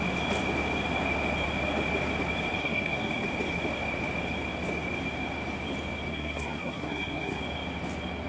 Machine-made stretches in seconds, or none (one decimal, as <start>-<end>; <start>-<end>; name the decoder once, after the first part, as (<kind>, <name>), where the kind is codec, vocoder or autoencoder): 2.6-3.1 (codec, SNAC); 6.1-7.4